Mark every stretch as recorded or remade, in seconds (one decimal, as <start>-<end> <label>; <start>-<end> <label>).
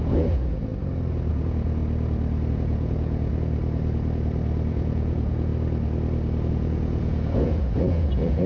0.0-0.7 remade; 0.7-1.3 recorded; 1.3-1.8 remade; 1.8-2.5 recorded; 2.5-3.3 remade; 3.3-4.7 recorded; 4.7-5.5 remade; 5.5-6.5 recorded; 6.5-8.5 remade